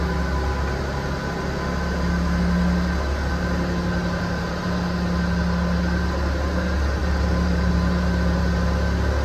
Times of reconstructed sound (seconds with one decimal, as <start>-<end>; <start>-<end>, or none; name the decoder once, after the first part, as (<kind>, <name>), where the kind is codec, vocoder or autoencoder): 7.0-7.7 (vocoder, BigVGAN v2)